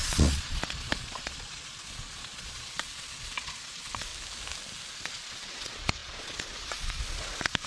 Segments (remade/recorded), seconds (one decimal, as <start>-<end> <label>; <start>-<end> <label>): 0.0-4.1 remade; 4.1-4.9 recorded; 4.9-7.7 remade